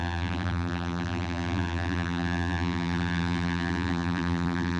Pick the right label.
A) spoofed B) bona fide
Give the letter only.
A